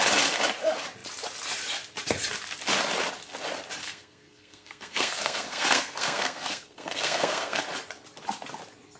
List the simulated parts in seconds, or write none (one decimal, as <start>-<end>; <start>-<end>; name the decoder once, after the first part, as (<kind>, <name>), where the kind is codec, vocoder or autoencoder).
3.8-7.6 (codec, SNAC)